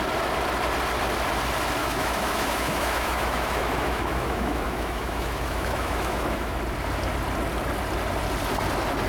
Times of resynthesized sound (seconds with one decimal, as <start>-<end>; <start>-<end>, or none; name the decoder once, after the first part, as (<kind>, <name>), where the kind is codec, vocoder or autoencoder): 1.8-6.6 (autoencoder, DAC-VAE)